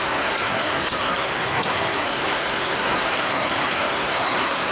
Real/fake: fake